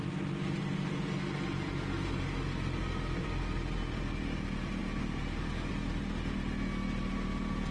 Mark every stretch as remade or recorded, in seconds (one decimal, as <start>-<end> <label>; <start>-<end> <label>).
0.0-7.7 recorded